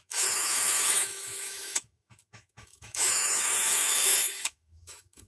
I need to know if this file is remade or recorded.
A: remade